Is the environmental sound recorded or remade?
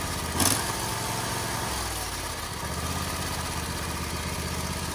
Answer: recorded